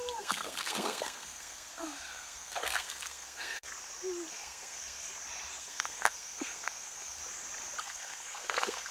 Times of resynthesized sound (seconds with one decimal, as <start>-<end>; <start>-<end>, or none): 0.0-3.7; 4.3-5.1; 5.6-7.2; 7.8-8.9